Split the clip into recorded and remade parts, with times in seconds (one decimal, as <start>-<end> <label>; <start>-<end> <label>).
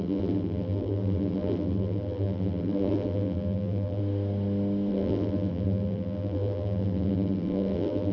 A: 0.0-4.0 remade; 4.0-4.9 recorded; 4.9-8.1 remade